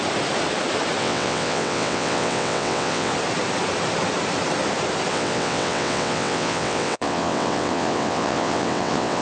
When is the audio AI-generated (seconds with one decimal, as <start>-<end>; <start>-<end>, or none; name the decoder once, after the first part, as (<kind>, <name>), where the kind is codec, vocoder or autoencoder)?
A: 1.0-3.1 (vocoder, WaveNeXt); 5.1-9.2